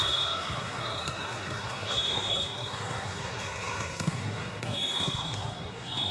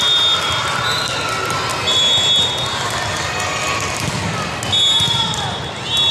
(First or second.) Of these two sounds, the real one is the second